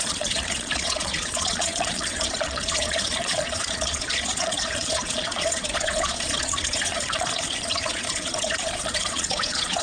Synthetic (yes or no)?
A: yes